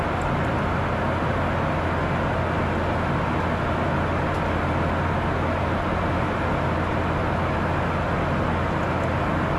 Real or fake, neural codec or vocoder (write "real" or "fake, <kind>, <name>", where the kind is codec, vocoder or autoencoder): real